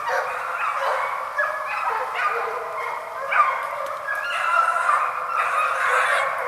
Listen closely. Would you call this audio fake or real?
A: real